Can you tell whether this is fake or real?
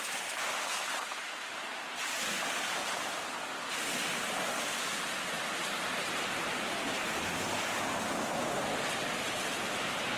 real